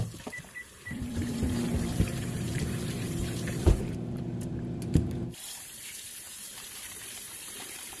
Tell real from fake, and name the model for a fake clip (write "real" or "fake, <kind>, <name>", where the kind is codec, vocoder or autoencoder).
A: fake, vocoder, BigVGAN v2